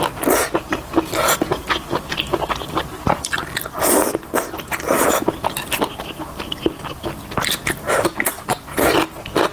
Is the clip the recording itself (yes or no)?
yes